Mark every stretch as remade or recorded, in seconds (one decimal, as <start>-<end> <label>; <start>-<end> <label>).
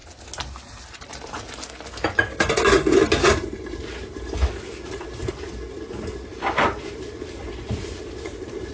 0.0-3.6 recorded; 3.6-8.7 remade